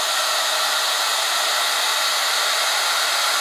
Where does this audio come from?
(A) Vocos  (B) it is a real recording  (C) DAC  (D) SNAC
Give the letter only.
B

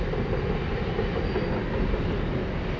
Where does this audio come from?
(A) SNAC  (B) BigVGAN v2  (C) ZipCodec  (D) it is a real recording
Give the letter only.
D